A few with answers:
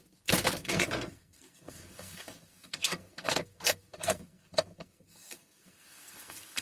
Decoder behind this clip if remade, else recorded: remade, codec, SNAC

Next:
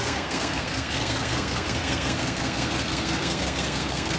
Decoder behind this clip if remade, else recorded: remade, codec, SNAC